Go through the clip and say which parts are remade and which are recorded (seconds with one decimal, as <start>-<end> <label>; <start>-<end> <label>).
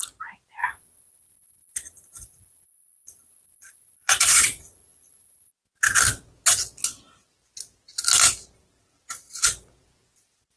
0.0-0.6 recorded; 0.6-5.5 remade; 5.5-10.6 recorded